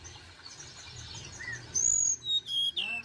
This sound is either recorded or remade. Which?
recorded